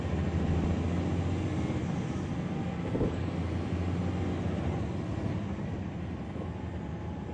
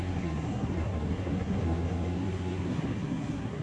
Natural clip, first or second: first